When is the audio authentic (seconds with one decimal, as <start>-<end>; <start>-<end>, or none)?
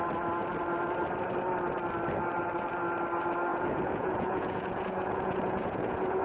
0.0-3.5